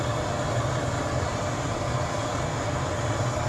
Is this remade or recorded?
recorded